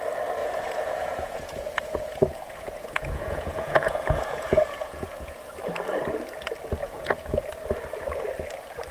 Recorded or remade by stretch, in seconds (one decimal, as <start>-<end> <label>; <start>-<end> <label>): 0.0-0.4 recorded; 0.4-5.4 remade; 5.4-6.8 recorded; 6.8-7.5 remade; 7.5-8.9 recorded